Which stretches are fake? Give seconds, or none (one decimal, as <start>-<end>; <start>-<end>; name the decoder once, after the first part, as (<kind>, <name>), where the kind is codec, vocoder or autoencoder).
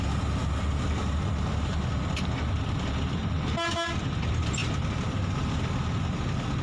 none